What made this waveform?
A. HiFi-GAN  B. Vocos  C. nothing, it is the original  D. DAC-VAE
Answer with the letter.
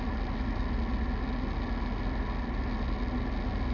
C